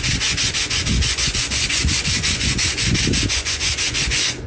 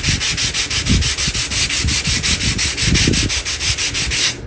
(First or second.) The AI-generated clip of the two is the first